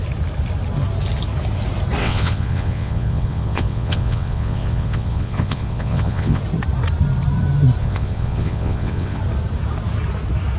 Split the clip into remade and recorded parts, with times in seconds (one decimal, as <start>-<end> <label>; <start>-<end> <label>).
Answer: 0.0-2.0 recorded; 2.0-6.4 remade; 6.4-7.8 recorded; 7.8-9.2 remade; 9.2-10.6 recorded